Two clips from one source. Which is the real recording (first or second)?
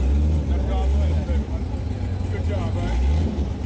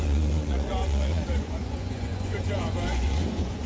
first